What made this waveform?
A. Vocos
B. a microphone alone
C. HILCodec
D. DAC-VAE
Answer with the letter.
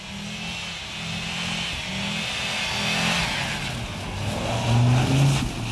B